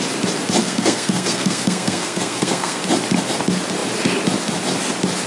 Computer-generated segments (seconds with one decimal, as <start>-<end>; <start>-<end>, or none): 0.6-2.8